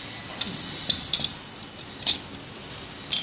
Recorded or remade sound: recorded